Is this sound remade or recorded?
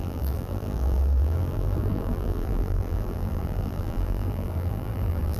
remade